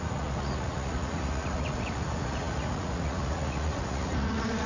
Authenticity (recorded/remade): remade